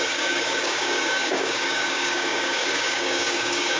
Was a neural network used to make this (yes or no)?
yes